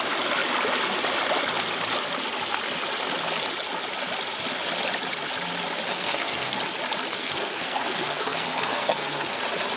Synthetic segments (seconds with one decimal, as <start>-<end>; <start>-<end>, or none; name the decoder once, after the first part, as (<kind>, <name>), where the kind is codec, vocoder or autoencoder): 5.9-6.6 (codec, SNAC); 7.1-9.4